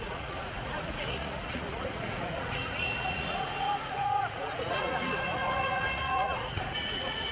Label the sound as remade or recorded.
remade